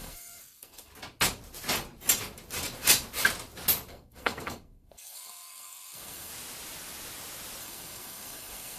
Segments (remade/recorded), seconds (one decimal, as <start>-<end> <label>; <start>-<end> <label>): 0.0-0.9 remade; 0.9-3.9 recorded; 3.9-6.3 remade; 6.3-7.6 recorded; 7.6-8.8 remade